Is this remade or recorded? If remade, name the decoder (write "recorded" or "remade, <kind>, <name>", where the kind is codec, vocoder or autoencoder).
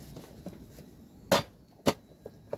recorded